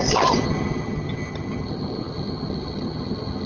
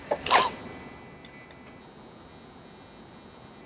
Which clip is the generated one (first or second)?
first